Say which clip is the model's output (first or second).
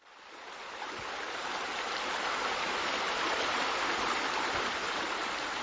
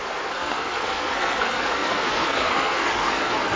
second